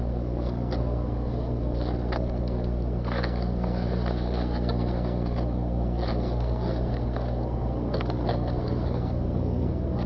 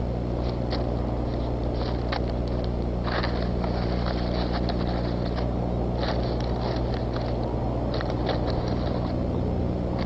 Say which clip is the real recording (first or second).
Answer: second